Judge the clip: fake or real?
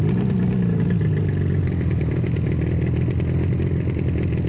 real